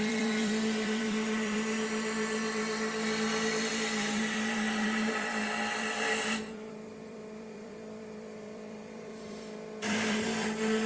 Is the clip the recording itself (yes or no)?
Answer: no